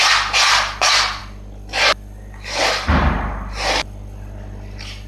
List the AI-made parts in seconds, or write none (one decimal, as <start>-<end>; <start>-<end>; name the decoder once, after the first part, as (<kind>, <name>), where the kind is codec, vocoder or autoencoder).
none